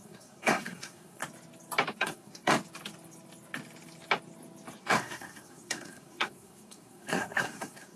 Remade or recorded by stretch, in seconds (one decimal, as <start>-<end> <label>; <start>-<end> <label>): 0.0-1.2 remade; 1.2-1.9 recorded; 1.9-2.5 remade; 2.5-4.8 recorded; 4.8-8.0 remade